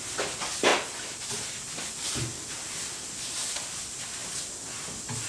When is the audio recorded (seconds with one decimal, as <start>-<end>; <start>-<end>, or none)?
0.0-5.3

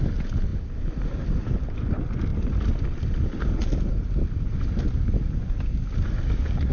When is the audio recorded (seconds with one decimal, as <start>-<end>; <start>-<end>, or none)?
0.0-6.7

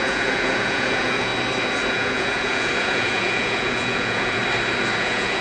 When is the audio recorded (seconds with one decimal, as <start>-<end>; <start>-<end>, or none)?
1.3-1.9; 4.4-5.0